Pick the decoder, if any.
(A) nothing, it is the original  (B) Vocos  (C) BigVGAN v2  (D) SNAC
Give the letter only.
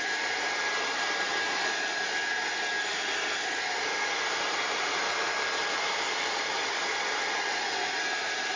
A